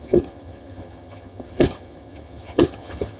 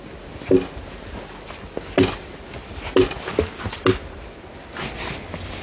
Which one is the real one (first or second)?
second